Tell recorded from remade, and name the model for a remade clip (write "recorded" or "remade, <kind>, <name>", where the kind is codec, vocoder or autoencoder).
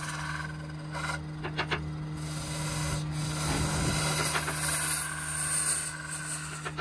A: recorded